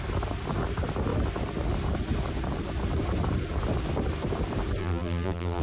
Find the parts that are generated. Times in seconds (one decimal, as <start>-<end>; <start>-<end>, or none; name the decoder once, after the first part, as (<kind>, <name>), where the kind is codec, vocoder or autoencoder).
4.8-5.6 (vocoder, BigVGAN v2)